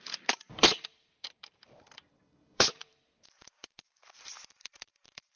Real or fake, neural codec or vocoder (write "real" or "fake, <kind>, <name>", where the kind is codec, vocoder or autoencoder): fake, vocoder, BigVGAN v2